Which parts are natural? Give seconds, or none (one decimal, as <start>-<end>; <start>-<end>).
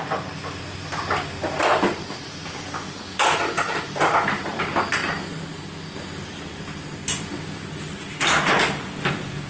5.0-6.1